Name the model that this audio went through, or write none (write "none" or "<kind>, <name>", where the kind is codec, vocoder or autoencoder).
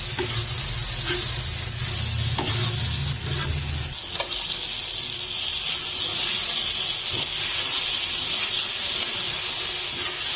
none